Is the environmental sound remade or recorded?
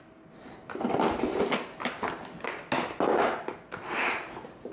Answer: recorded